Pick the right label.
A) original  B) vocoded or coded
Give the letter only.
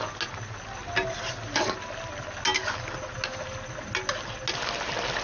A